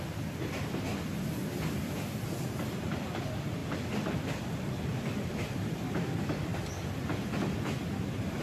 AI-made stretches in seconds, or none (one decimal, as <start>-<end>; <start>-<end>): 0.0-6.5